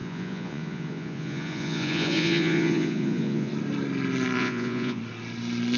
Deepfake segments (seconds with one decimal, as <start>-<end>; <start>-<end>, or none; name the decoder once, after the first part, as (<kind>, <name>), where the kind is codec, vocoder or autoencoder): 0.0-3.5 (vocoder, Vocos); 4.4-5.0